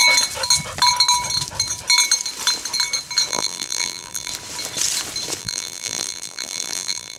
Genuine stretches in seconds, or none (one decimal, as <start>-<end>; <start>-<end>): 0.0-3.3; 4.3-5.4